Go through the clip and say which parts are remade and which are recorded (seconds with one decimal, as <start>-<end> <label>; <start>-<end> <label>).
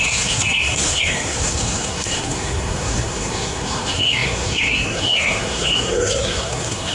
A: 0.0-6.9 remade